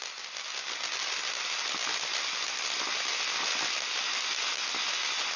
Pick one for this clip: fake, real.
real